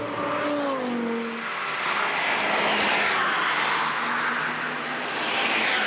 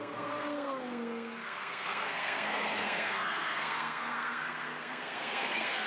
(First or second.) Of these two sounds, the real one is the first